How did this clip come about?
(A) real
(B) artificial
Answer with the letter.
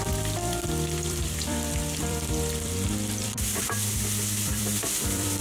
B